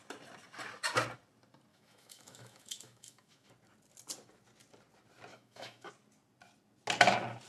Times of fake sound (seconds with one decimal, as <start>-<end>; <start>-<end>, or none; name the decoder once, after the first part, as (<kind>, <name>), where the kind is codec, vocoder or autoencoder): 1.7-3.5 (autoencoder, DAC-VAE); 5.3-5.9